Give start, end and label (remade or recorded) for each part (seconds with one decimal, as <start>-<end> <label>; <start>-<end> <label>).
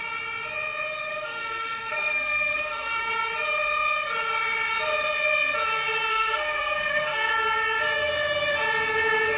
0.0-1.1 recorded; 1.1-3.1 remade; 3.1-6.1 recorded; 6.1-7.3 remade; 7.3-9.4 recorded